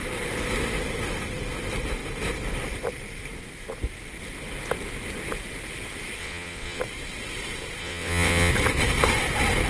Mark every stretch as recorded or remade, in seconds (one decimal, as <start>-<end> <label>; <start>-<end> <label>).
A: 0.0-6.2 recorded; 6.2-6.8 remade; 6.8-7.8 recorded; 7.8-8.5 remade; 8.5-9.7 recorded